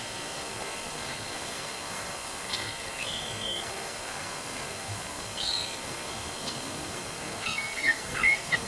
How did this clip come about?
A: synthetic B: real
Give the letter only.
A